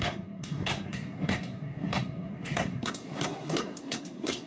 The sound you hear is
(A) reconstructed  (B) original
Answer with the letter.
A